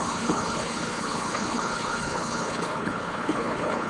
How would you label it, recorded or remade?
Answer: remade